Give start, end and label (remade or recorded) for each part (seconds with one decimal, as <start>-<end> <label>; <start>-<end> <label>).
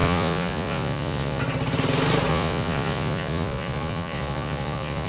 0.0-1.4 remade; 1.4-2.3 recorded; 2.3-5.1 remade